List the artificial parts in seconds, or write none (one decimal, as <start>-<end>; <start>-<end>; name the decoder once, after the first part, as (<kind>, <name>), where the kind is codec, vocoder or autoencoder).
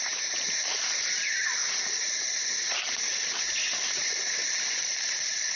0.0-1.6 (vocoder, BigVGAN v2); 3.9-5.6